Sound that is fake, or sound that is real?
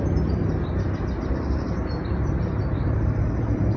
fake